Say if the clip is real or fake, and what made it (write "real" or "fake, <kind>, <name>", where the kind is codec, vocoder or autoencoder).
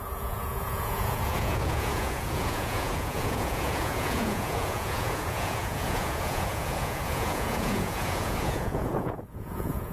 fake, vocoder, Vocos